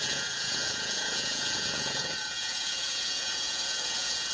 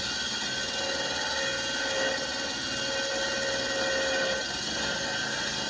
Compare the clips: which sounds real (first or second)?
second